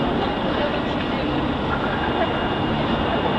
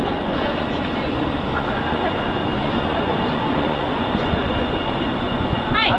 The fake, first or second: second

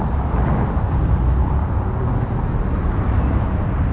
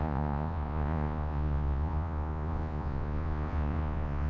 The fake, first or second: second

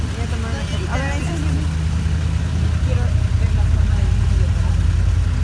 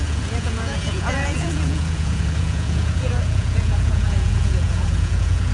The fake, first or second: second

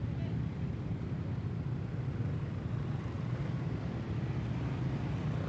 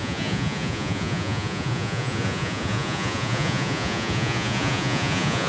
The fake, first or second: second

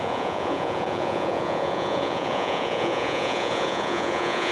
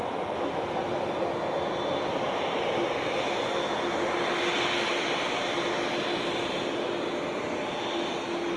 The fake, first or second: first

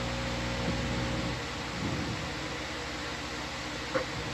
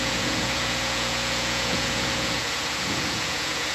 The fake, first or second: second